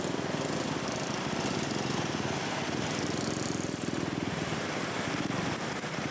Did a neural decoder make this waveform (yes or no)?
no